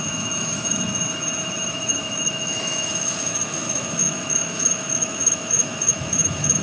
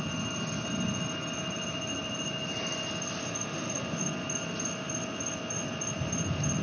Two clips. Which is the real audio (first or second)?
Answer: second